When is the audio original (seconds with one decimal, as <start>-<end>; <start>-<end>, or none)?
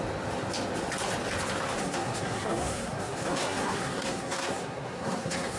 0.0-1.8